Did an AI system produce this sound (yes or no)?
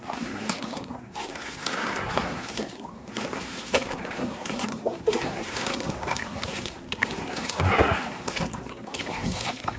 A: yes